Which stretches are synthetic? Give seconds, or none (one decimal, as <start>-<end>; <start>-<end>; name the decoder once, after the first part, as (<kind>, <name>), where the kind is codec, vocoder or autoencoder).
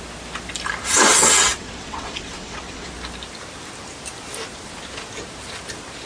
0.8-2.9 (vocoder, WaveNeXt)